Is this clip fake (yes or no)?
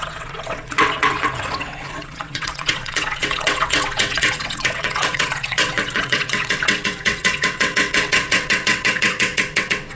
yes